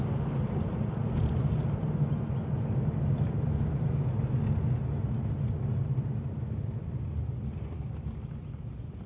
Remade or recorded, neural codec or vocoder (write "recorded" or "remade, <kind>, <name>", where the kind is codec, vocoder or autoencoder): recorded